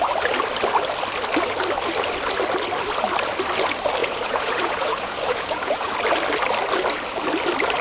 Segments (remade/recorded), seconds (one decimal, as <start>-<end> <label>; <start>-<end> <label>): 0.0-4.0 recorded; 4.0-5.9 remade; 5.9-7.8 recorded